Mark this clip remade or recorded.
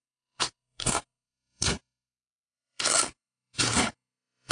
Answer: remade